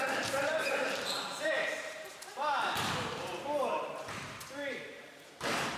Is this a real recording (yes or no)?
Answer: no